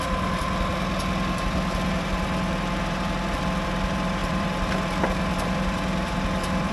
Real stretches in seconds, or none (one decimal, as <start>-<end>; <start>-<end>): 0.7-1.4